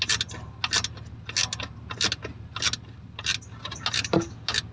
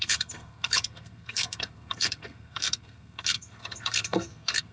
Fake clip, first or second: second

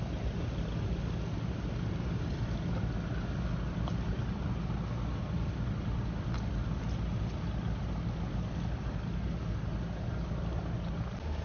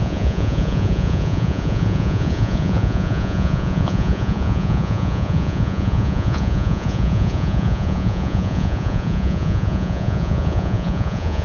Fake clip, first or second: second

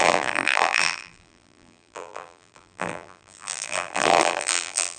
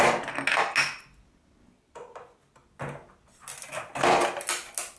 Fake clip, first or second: first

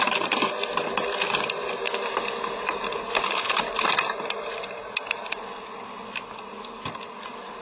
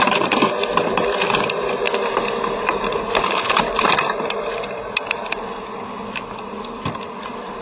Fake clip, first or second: second